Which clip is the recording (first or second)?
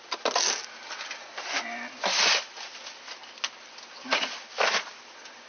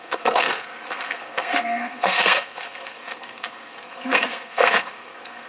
first